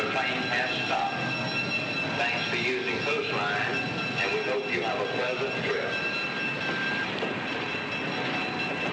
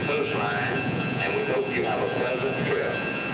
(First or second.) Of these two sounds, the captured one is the first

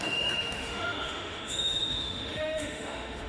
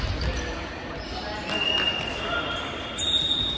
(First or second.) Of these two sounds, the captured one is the second